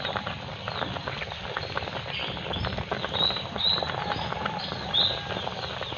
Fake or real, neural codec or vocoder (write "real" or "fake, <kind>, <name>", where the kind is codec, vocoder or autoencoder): real